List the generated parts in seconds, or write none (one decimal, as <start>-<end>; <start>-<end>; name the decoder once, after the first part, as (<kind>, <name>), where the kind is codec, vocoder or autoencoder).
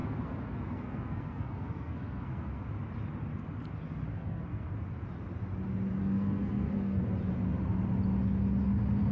0.0-2.6 (codec, SNAC); 4.1-4.7; 6.0-7.0